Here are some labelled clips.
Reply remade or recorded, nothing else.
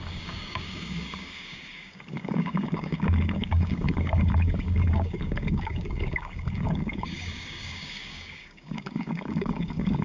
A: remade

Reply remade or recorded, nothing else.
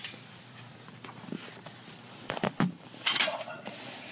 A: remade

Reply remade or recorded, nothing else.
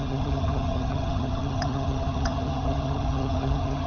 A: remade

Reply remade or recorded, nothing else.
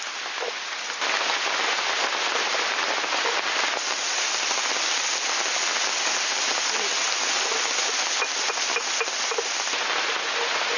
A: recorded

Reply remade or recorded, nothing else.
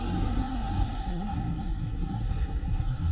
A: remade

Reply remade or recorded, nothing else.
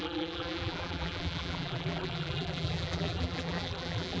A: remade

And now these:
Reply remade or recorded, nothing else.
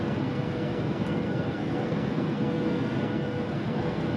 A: remade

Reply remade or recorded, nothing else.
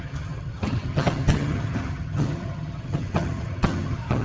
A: remade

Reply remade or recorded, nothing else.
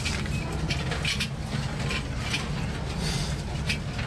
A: recorded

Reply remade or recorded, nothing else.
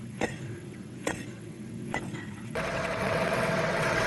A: remade